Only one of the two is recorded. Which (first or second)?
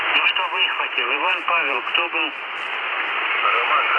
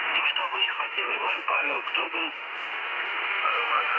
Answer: first